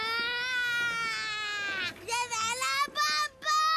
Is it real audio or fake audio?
real